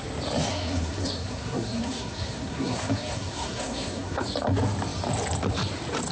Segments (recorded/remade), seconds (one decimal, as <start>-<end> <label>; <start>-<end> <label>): 0.0-0.5 recorded; 0.5-4.2 remade; 4.2-6.1 recorded